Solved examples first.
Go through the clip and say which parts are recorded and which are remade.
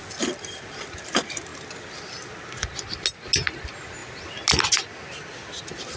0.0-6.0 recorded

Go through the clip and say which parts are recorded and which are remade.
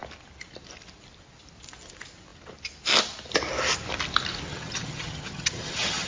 0.0-4.5 recorded; 4.5-6.1 remade